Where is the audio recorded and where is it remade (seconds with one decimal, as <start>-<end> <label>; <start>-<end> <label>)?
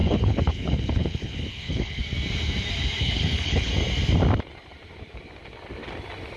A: 0.0-2.0 remade; 2.0-3.0 recorded; 3.0-3.7 remade; 3.7-6.4 recorded